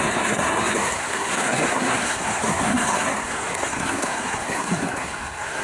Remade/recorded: remade